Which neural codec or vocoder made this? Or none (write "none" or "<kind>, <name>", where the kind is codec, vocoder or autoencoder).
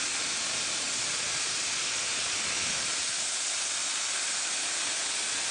none